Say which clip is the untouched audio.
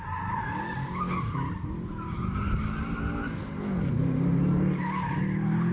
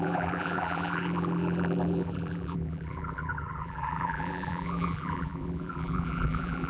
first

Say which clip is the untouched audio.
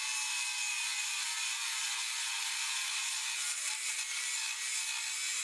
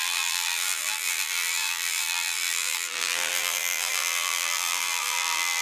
first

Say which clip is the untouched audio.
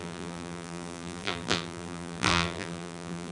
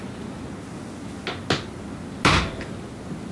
second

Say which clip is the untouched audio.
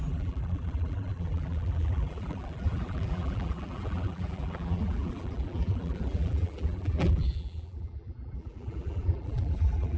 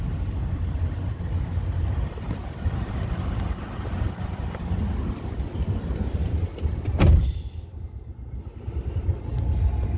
second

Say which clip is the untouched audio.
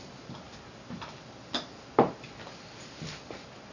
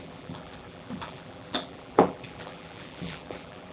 first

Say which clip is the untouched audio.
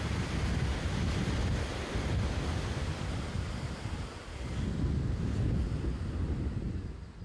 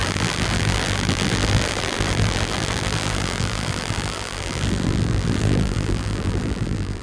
first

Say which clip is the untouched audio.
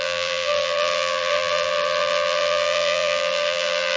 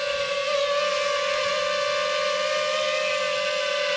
second